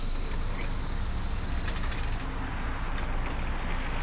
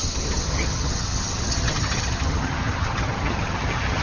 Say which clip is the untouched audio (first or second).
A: first